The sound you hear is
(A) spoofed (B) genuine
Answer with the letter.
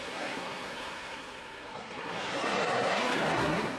A